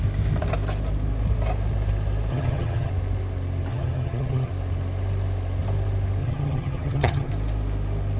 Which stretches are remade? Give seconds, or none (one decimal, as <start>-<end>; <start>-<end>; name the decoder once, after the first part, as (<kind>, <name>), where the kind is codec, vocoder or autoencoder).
2.3-2.9 (vocoder, HiFi-GAN); 3.7-4.5; 6.2-7.3